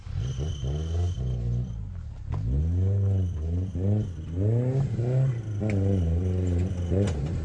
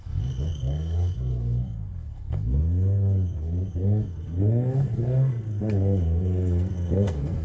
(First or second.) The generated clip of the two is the second